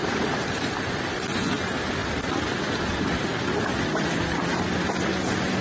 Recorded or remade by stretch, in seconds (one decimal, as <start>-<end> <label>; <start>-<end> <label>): 0.0-1.2 remade; 1.2-5.6 recorded